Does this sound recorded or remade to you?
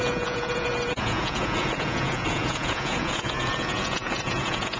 remade